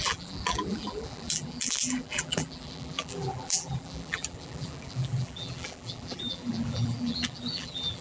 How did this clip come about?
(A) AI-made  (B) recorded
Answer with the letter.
A